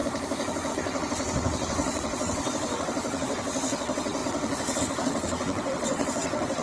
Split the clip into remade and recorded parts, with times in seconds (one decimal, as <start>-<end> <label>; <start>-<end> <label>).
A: 0.0-0.7 recorded; 0.7-6.6 remade